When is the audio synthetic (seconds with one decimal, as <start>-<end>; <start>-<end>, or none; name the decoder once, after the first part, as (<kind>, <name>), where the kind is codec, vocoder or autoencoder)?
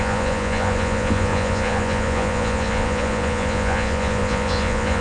0.0-5.0 (vocoder, Vocos)